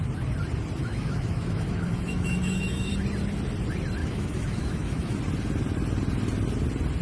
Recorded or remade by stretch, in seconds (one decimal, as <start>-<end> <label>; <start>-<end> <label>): 0.0-0.9 recorded; 0.9-2.9 remade; 2.9-4.0 recorded; 4.0-5.2 remade; 5.2-7.0 recorded

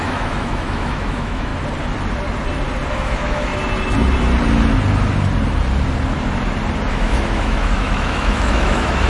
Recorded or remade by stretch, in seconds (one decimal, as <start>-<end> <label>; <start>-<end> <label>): 0.0-1.5 remade; 1.5-2.9 recorded; 2.9-3.5 remade; 3.5-6.9 recorded; 6.9-9.1 remade

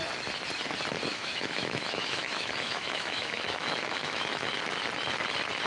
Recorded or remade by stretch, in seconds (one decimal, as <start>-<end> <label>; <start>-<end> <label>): 0.0-1.1 recorded; 1.1-4.5 remade; 4.5-5.7 recorded

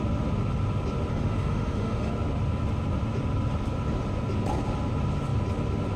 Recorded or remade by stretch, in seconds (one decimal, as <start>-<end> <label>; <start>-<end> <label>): 0.0-1.1 recorded; 1.1-2.1 remade; 2.1-6.0 recorded